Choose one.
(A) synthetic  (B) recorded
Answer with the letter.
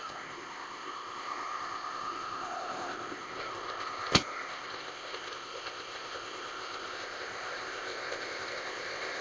A